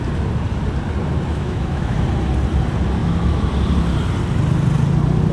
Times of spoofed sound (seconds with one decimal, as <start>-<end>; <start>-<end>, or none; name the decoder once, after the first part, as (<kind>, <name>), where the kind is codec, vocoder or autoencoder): 1.3-2.0 (autoencoder, DAC-VAE); 3.0-3.5